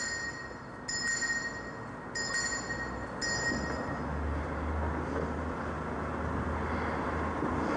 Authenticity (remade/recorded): recorded